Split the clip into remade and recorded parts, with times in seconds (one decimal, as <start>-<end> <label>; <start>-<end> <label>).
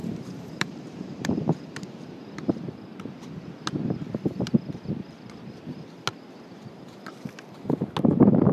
0.0-2.1 remade; 2.1-8.5 recorded